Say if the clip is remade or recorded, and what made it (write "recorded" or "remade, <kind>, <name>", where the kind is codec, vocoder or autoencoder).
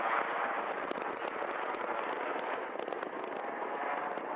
recorded